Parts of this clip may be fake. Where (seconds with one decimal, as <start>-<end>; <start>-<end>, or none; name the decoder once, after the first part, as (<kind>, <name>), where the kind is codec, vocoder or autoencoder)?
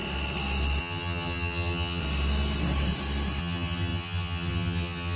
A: 0.8-2.0 (vocoder, HiFi-GAN); 3.4-5.2